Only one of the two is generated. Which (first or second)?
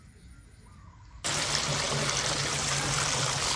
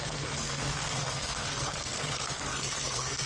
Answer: second